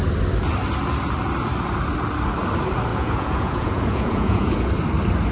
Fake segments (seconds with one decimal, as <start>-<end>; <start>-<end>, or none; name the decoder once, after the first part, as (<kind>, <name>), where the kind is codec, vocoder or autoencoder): 2.9-4.7 (vocoder, Vocos)